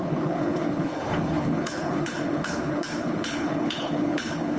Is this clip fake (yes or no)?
yes